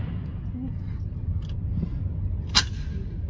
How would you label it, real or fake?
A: real